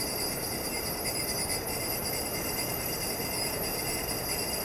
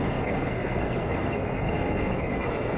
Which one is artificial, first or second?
second